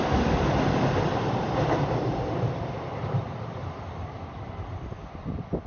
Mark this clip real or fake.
fake